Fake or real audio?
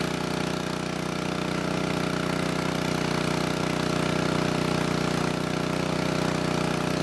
real